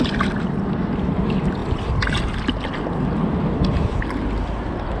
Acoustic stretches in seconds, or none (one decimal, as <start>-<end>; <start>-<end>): 0.0-5.0